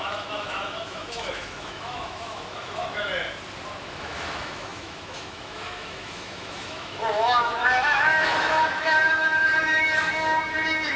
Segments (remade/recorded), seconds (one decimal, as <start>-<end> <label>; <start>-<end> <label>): 0.0-3.1 remade; 3.1-3.8 recorded; 3.8-11.0 remade